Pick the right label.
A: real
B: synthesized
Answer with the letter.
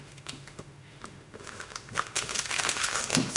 B